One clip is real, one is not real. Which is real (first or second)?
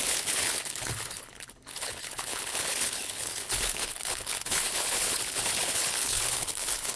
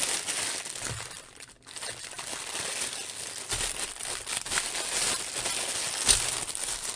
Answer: second